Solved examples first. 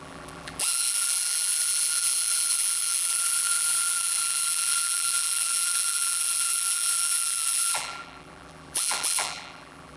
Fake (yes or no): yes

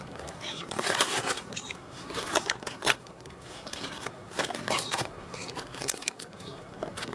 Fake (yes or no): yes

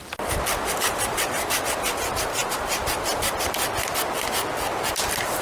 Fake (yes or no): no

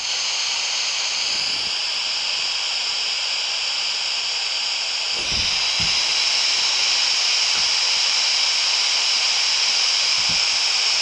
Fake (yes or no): no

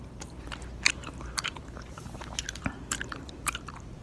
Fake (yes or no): yes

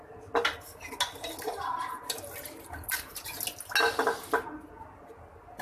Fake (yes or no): no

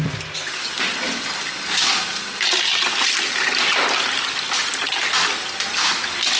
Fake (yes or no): no